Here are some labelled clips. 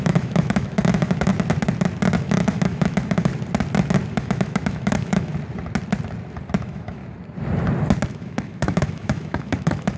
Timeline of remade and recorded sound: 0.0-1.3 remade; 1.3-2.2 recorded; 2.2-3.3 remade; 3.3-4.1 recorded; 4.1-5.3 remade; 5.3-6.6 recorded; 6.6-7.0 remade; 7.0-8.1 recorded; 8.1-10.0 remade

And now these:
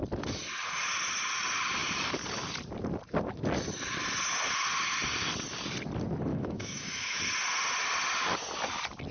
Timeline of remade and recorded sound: 0.0-6.3 recorded; 6.3-7.2 remade; 7.2-9.1 recorded

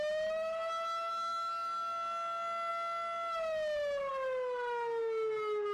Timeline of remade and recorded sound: 0.0-5.7 recorded

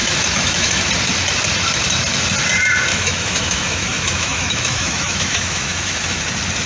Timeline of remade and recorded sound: 0.0-0.9 remade; 0.9-2.9 recorded; 2.9-6.2 remade; 6.2-6.7 recorded

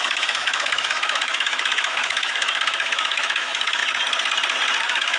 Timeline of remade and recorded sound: 0.0-3.8 remade; 3.8-4.8 recorded; 4.8-5.2 remade

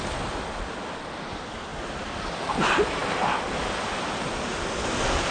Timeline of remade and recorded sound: 0.0-5.3 recorded

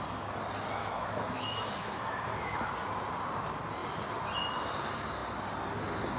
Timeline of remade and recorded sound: 0.0-0.8 recorded; 0.8-2.7 remade; 2.7-6.2 recorded